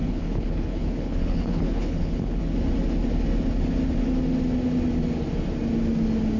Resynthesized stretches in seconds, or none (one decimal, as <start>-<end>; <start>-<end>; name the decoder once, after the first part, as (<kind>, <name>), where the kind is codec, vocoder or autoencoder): 0.0-2.4 (codec, HILCodec)